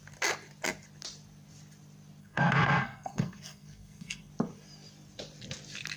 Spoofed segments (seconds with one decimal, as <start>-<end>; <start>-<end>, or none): 2.2-4.3